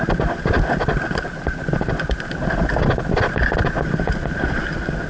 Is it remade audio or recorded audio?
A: recorded